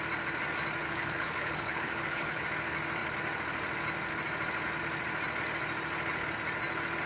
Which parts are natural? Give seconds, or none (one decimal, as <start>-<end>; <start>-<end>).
0.0-0.8; 2.4-7.1